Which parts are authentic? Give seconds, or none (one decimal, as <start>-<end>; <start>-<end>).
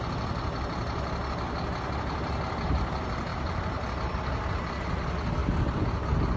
0.0-6.4